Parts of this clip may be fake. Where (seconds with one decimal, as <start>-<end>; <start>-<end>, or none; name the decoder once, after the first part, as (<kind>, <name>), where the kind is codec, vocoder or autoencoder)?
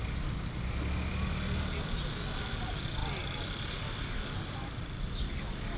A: none